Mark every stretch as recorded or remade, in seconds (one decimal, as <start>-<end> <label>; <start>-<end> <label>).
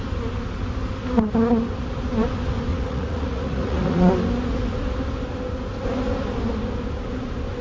0.0-2.7 recorded; 2.7-4.1 remade; 4.1-7.6 recorded